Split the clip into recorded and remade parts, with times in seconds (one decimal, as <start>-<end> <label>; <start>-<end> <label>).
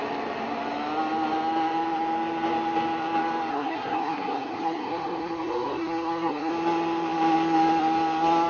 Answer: 0.0-3.5 recorded; 3.5-6.5 remade; 6.5-8.5 recorded